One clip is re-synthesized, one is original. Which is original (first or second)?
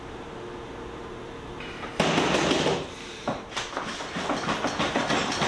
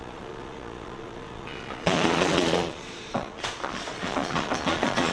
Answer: first